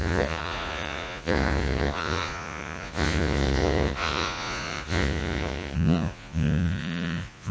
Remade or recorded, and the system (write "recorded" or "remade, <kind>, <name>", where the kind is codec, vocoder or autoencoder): remade, vocoder, Vocos